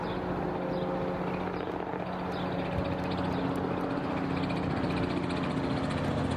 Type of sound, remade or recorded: recorded